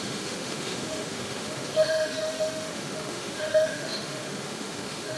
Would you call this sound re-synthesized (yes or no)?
yes